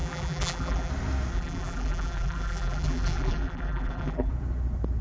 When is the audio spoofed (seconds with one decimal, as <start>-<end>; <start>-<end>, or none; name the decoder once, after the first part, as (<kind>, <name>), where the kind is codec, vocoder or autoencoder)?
0.0-0.9 (vocoder, BigVGAN v2); 1.3-4.3